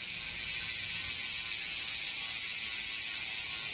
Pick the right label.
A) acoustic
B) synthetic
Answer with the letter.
A